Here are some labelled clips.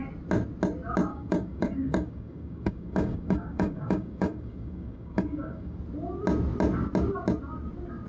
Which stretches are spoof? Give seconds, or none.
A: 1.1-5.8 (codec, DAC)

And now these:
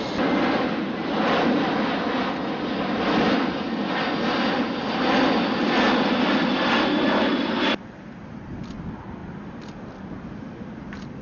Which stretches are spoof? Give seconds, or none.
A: none

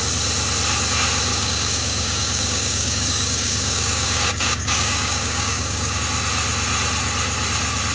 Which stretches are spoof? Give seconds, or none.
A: 1.3-6.0 (codec, DAC)

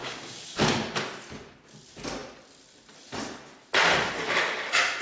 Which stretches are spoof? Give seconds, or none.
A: 0.0-0.6 (codec, DAC)

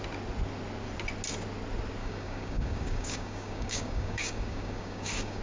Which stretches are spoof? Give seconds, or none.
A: 2.0-5.4 (codec, DAC)

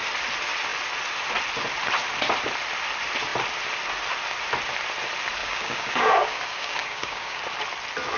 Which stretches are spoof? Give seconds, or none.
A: 5.4-7.4 (codec, DAC)